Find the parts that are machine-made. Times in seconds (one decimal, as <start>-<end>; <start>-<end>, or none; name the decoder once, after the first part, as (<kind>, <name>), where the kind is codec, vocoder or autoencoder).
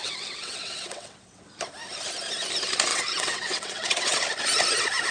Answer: 0.0-1.6 (vocoder, WaveNeXt); 2.9-4.2